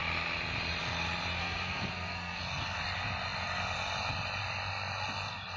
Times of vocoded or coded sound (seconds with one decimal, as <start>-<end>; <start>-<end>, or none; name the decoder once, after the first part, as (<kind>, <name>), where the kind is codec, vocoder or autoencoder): 1.4-2.4 (codec, SNAC)